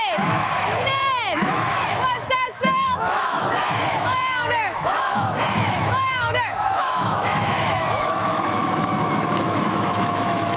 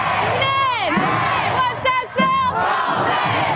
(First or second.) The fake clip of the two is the first